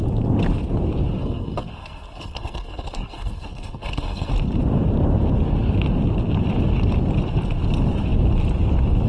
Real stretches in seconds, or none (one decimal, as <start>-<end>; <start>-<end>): 0.0-1.2; 4.3-9.1